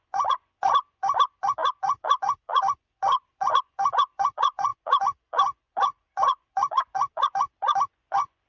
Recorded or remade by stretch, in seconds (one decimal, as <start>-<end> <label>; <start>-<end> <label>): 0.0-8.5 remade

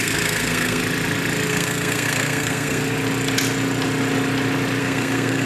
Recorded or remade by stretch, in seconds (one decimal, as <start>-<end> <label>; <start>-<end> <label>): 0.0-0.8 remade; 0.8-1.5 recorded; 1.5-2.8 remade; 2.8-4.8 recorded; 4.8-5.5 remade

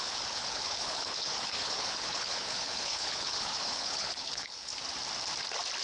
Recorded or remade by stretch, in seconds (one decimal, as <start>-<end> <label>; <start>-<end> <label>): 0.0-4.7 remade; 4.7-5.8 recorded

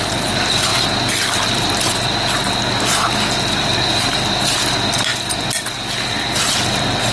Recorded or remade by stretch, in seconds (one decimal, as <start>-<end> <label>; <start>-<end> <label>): 0.0-7.1 recorded

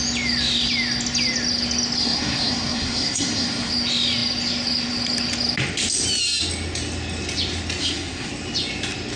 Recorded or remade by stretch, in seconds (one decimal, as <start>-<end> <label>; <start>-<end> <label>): 0.0-2.0 recorded; 2.0-3.7 remade; 3.7-7.8 recorded; 7.8-8.3 remade; 8.3-9.2 recorded